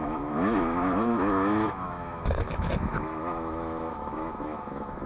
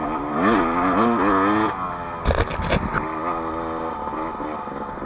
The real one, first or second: second